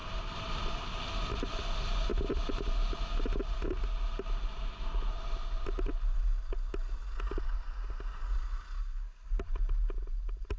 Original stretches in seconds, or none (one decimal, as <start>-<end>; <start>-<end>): 0.6-10.6